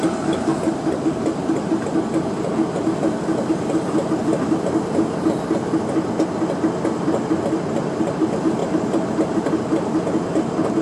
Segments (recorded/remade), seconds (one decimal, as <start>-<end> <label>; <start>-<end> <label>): 0.0-8.6 recorded; 8.6-9.4 remade; 9.4-10.8 recorded